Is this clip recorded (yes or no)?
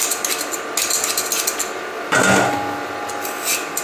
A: yes